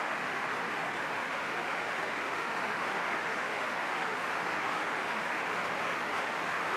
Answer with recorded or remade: remade